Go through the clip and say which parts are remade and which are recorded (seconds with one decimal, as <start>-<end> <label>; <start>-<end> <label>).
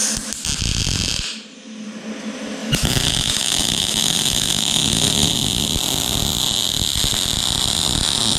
0.0-2.6 recorded; 2.6-5.3 remade; 5.3-8.4 recorded